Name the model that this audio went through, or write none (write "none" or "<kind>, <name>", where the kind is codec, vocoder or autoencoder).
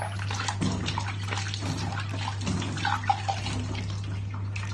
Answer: none